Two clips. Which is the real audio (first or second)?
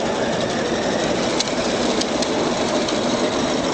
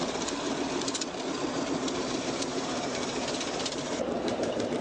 first